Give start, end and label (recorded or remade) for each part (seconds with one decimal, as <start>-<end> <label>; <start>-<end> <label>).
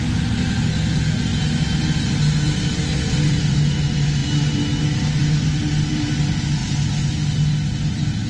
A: 0.0-8.3 recorded